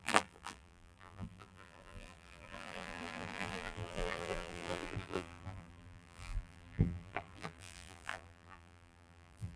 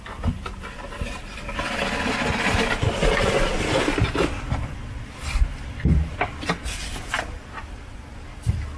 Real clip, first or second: second